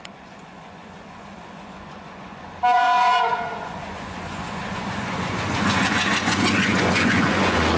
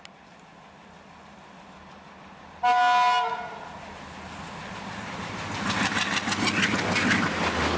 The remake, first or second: first